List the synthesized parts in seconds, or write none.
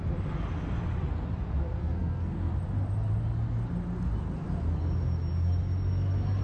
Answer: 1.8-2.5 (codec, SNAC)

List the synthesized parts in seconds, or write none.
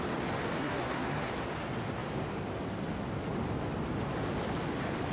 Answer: 0.6-1.3 (codec, SNAC)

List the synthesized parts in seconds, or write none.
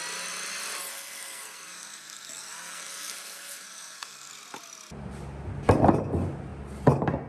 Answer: 0.9-4.3 (codec, SNAC)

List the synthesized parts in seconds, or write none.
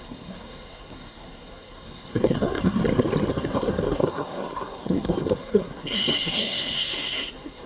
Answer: 0.0-2.8 (codec, SNAC); 3.3-7.7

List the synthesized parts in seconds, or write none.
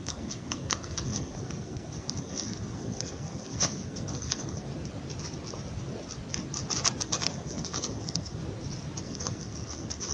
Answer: 0.0-4.7 (codec, SNAC); 7.0-8.4; 9.0-10.1